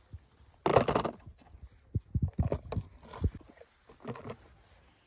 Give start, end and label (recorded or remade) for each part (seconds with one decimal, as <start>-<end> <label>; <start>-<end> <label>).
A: 0.0-5.1 recorded